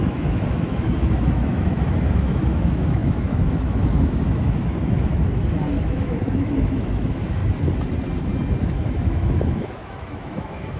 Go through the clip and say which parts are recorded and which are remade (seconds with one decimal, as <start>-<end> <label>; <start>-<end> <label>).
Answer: 0.0-7.4 remade; 7.4-8.6 recorded; 8.6-10.8 remade

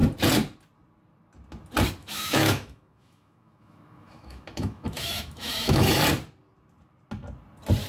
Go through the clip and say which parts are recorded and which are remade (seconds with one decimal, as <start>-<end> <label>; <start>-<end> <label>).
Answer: 0.0-2.0 recorded; 2.0-6.0 remade; 6.0-7.9 recorded

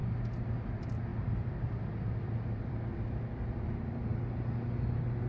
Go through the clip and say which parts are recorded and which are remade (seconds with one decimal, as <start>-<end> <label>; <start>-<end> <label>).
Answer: 0.0-1.1 recorded; 1.1-2.9 remade; 2.9-5.3 recorded